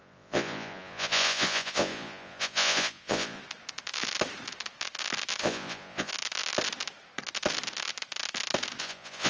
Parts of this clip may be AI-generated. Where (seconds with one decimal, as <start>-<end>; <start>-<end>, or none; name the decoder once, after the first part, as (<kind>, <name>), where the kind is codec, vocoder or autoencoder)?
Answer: 0.0-3.4 (vocoder, Vocos); 5.4-6.1; 8.8-9.3